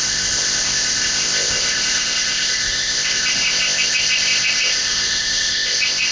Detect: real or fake fake